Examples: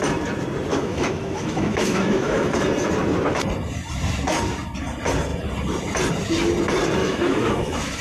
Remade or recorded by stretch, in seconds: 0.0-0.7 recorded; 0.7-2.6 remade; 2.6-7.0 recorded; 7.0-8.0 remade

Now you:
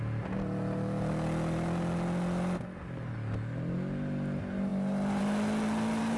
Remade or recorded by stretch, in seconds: 0.0-6.2 recorded

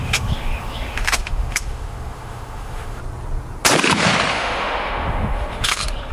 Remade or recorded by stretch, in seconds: 0.0-3.0 remade; 3.0-4.3 recorded; 4.3-6.1 remade

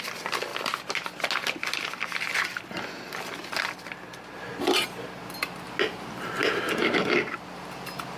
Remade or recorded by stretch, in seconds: 0.0-8.2 recorded

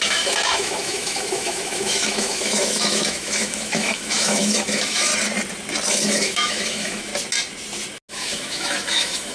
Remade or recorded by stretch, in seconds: 0.0-5.1 remade; 5.1-5.9 recorded; 5.9-7.1 remade; 7.1-8.1 recorded; 8.1-9.3 remade

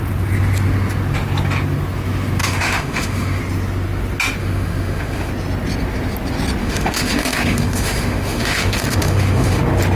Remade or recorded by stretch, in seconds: 0.0-2.4 recorded; 2.4-3.4 remade; 3.4-4.4 recorded; 4.4-5.3 remade; 5.3-6.6 recorded; 6.6-9.6 remade; 9.6-10.0 recorded

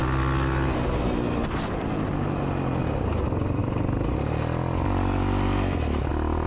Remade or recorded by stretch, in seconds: 0.0-6.5 recorded

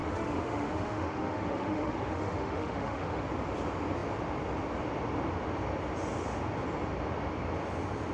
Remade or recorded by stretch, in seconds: 0.0-3.2 remade; 3.2-8.1 recorded